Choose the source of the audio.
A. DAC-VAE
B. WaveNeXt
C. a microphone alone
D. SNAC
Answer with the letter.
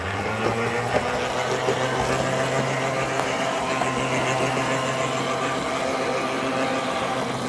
C